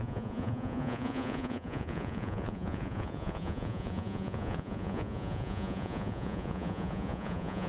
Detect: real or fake fake